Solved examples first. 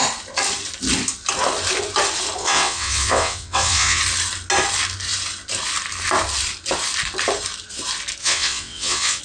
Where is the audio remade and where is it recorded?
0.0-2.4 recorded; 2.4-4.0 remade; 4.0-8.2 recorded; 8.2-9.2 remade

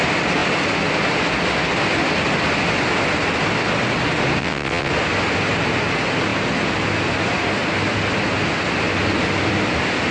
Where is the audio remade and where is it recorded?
0.0-4.4 recorded; 4.4-4.9 remade; 4.9-10.1 recorded